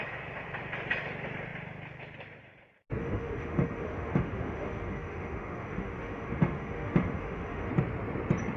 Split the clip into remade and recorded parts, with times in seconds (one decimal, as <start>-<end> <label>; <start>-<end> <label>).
0.0-3.0 recorded; 3.0-7.7 remade; 7.7-8.6 recorded